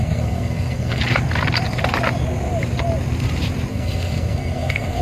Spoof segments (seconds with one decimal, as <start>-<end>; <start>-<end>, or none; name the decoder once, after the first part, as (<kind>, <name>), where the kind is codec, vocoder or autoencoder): 0.0-1.0 (codec, SNAC); 3.7-5.0